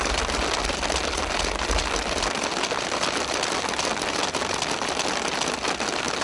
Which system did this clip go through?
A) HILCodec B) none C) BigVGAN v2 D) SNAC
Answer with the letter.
B